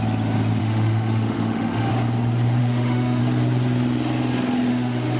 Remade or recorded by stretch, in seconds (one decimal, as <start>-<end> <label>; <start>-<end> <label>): 0.0-0.6 recorded; 0.6-1.9 remade; 1.9-2.6 recorded; 2.6-3.2 remade; 3.2-4.7 recorded; 4.7-5.2 remade